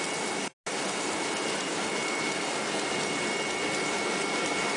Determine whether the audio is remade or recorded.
recorded